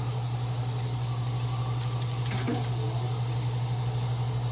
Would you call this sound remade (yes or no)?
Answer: no